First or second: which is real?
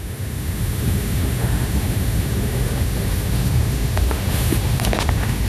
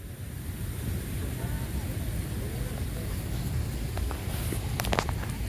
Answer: second